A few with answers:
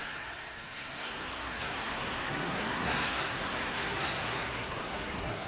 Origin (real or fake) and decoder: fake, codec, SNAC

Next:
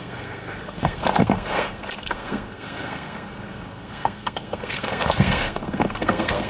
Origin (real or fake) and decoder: fake, codec, SNAC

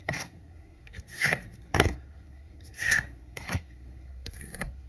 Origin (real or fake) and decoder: fake, codec, SNAC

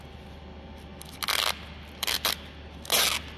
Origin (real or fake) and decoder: real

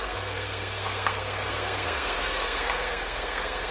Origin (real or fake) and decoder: fake, codec, SNAC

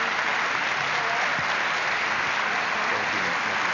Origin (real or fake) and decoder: real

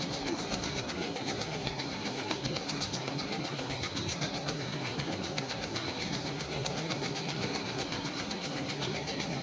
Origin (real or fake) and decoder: fake, codec, SNAC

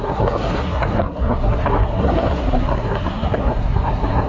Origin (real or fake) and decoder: fake, codec, SNAC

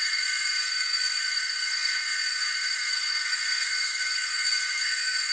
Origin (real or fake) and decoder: fake, codec, SNAC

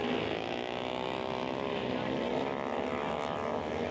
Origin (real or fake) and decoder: real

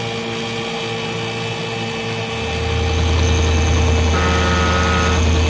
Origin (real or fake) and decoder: real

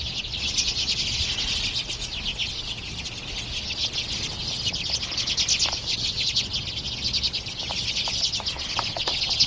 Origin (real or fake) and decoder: real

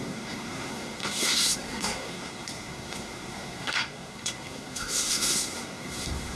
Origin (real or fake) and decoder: fake, codec, SNAC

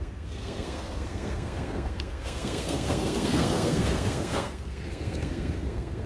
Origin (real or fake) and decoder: fake, codec, SNAC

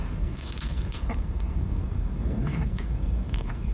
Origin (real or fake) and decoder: fake, codec, SNAC